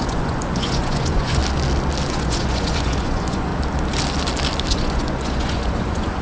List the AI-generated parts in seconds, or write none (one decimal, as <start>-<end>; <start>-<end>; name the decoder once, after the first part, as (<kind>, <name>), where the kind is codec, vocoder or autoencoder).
0.0-1.4 (vocoder, Vocos); 2.1-3.5; 4.7-6.2